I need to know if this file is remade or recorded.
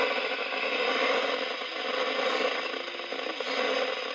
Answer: recorded